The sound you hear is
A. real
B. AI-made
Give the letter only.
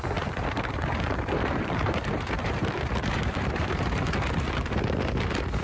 B